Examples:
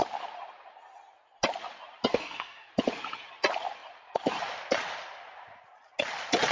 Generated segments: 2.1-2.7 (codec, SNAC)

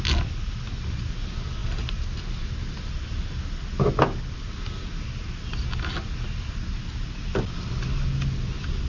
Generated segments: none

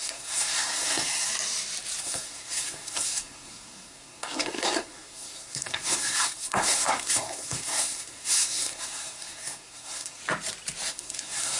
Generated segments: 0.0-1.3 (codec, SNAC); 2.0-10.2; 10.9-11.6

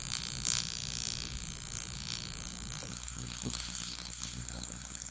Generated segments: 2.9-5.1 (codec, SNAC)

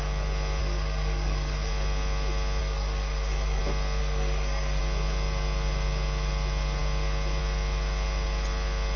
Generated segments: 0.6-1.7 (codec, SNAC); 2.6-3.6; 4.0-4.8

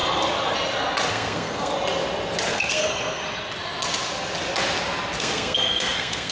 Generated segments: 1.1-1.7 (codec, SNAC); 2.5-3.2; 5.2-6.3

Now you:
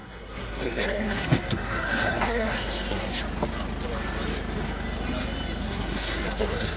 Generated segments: 0.0-3.2 (codec, SNAC); 5.6-6.8

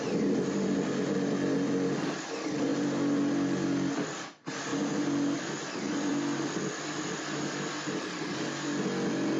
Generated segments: none